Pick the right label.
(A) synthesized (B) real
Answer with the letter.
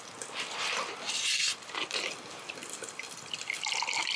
B